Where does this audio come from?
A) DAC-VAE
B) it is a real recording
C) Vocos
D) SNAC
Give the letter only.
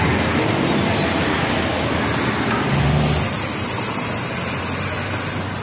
B